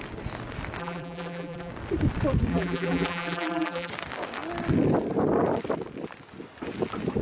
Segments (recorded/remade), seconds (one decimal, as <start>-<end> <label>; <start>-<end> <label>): 0.0-0.8 recorded; 0.8-1.7 remade; 1.7-2.5 recorded; 2.5-3.9 remade; 3.9-7.2 recorded